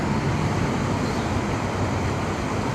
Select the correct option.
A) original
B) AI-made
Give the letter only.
A